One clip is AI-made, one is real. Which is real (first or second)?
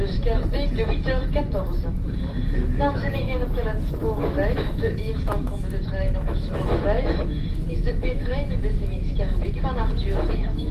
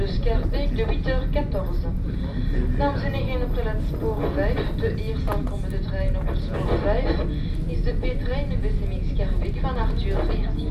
second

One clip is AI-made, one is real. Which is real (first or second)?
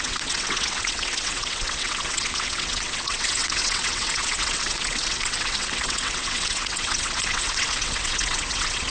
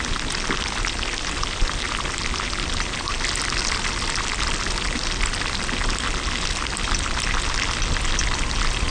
second